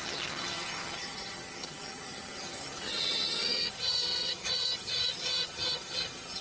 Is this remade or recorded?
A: remade